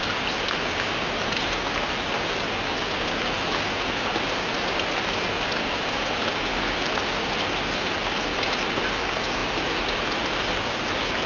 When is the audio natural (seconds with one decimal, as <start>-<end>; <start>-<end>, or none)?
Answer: 0.0-11.3